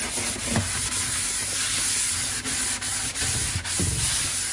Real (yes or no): yes